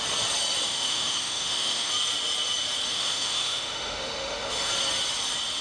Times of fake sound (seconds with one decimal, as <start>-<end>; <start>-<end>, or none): 0.7-1.9; 2.9-4.7